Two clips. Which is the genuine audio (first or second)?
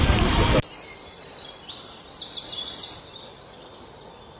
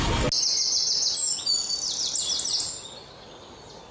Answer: second